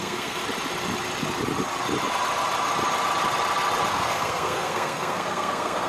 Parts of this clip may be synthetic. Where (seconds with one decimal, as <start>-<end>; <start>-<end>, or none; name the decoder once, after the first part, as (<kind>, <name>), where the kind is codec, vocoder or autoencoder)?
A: 0.0-0.4 (codec, SNAC); 3.9-5.9